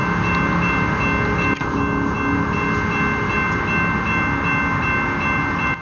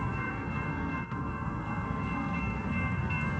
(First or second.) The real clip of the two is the first